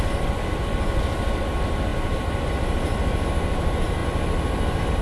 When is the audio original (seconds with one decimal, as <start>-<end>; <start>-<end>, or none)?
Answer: 0.0-1.9; 2.5-5.0

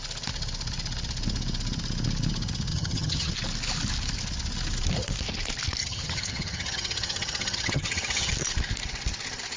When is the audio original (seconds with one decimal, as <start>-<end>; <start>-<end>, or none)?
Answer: 0.0-2.7; 3.3-5.8; 8.3-9.6